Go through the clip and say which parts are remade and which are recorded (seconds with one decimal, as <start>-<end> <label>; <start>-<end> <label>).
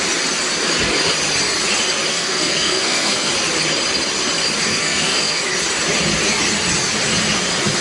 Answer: 0.0-2.1 recorded; 2.1-3.3 remade; 3.3-4.7 recorded; 4.7-5.4 remade; 5.4-7.8 recorded